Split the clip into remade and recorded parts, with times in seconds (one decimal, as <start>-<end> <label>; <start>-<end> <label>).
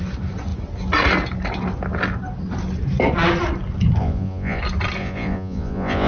0.0-4.0 recorded; 4.0-4.6 remade; 4.6-5.0 recorded; 5.0-6.1 remade